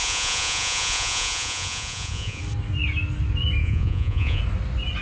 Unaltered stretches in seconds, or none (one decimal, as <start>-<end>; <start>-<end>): 2.4-3.6; 4.4-5.0